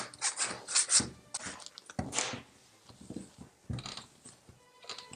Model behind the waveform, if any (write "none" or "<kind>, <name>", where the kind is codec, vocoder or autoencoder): none